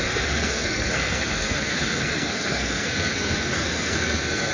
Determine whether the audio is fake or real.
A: fake